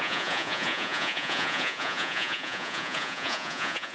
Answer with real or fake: fake